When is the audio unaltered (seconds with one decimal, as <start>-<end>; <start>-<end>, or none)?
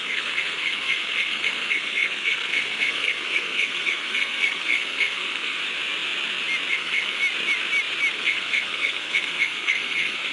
5.6-6.7; 7.2-8.1